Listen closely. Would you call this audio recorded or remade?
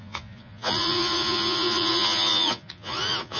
remade